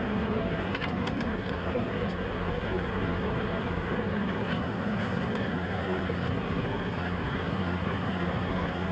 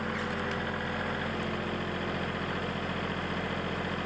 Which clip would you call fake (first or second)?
first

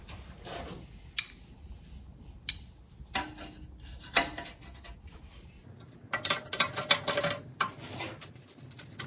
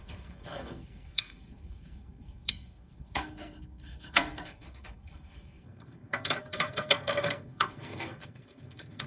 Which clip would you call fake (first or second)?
second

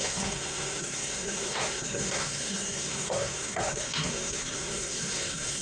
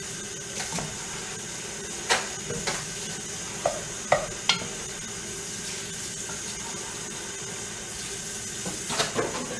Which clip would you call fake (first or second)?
first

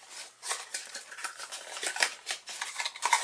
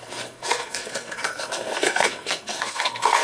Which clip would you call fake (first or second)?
second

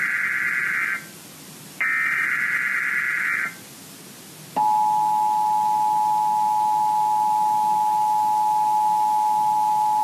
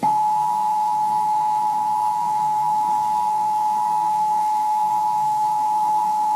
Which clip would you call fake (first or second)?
second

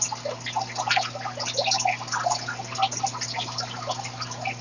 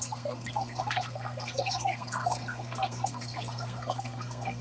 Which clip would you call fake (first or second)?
second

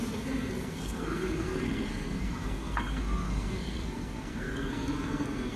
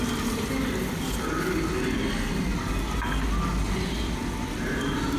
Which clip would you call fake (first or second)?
first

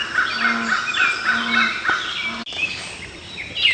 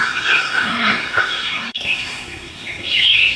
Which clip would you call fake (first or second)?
second